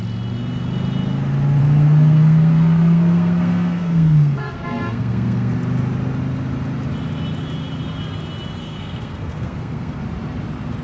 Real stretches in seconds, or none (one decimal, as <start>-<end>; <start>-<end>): 0.0-1.6; 5.5-8.6; 10.0-10.8

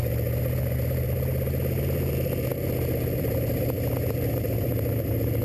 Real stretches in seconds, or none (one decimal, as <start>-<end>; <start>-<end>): 0.0-3.2

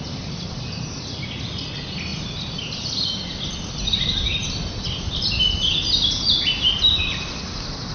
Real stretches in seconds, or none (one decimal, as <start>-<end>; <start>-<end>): 0.0-7.9

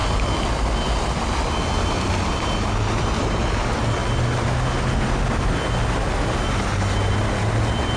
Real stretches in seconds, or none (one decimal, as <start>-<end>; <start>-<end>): 0.0-8.0

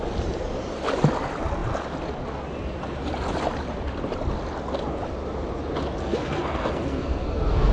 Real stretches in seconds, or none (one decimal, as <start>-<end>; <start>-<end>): 0.0-6.0

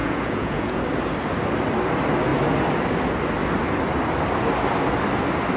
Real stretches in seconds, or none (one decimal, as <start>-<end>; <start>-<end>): 0.8-5.6

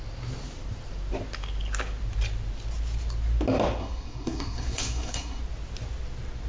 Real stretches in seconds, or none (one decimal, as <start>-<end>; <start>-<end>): 0.0-3.8; 5.4-6.5